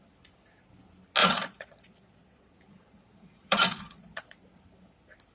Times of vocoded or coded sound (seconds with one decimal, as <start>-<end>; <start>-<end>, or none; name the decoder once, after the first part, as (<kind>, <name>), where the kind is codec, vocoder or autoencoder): 1.2-4.4 (vocoder, Vocos)